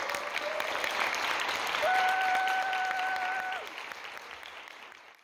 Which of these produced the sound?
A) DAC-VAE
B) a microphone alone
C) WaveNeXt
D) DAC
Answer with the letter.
B